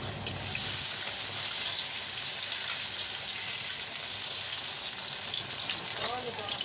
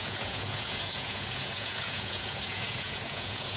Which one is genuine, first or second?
first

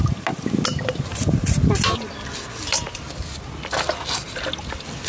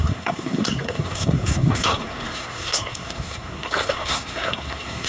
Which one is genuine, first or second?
first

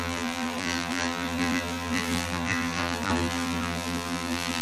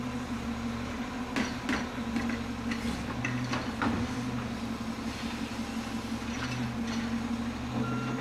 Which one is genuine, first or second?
second